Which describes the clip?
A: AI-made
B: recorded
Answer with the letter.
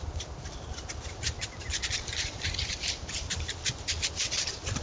B